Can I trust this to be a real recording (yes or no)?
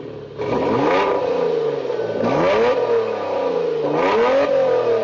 yes